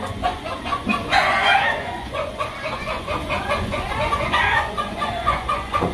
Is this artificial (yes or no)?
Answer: yes